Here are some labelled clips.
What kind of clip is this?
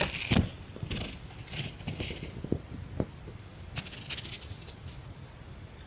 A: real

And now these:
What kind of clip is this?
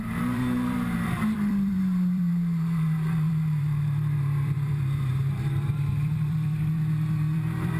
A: fake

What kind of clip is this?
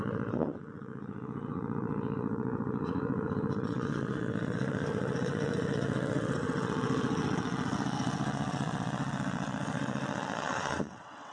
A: fake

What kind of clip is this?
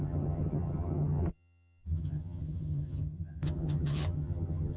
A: fake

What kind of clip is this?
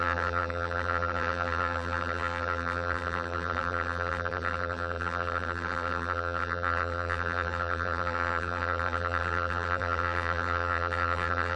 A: fake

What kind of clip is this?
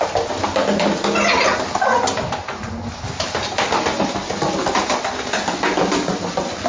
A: real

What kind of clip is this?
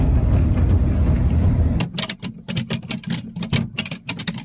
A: real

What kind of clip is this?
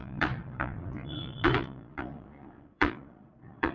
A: fake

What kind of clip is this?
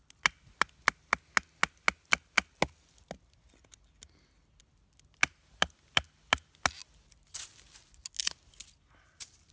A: real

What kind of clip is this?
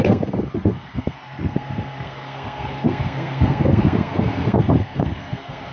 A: fake